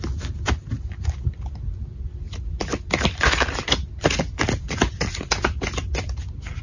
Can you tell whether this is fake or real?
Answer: real